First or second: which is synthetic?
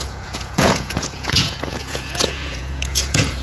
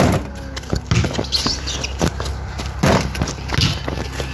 first